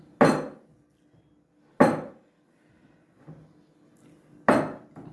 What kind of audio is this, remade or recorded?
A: recorded